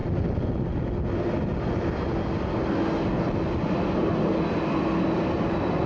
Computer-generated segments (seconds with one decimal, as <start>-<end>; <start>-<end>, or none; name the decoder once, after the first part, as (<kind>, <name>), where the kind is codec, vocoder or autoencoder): none